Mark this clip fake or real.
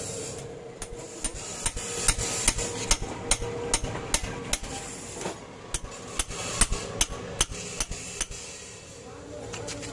real